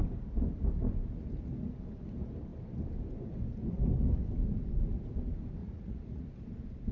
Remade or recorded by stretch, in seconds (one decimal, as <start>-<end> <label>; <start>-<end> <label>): 0.0-5.6 recorded; 5.6-6.2 remade; 6.2-6.9 recorded